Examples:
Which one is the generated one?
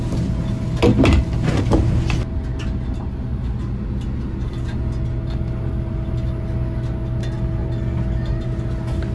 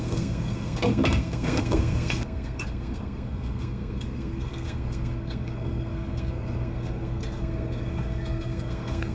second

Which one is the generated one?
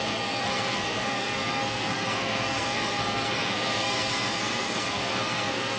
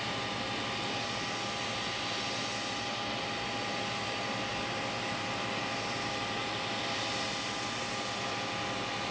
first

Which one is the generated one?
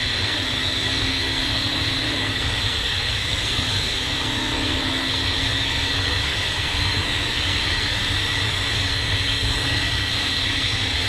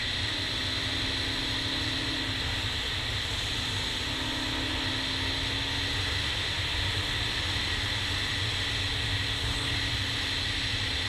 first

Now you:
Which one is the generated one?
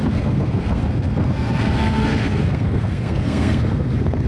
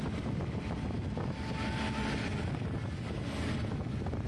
first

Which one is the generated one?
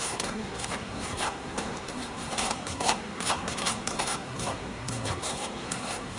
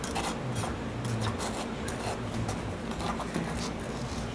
first